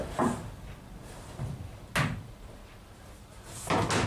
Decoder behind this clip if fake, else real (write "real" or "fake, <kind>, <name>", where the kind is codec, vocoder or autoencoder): real